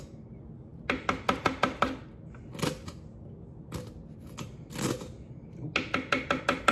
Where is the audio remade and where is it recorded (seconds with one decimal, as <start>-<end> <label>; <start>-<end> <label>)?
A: 0.0-6.7 recorded